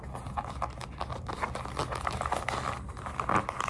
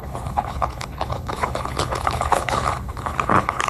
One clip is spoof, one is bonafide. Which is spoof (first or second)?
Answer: second